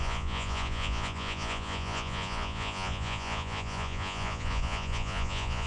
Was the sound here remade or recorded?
remade